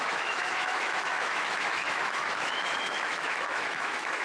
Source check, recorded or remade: remade